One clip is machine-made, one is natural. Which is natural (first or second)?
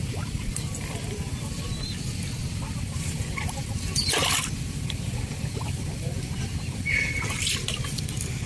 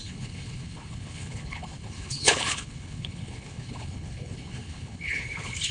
first